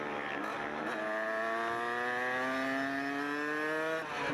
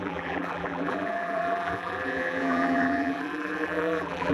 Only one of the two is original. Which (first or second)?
first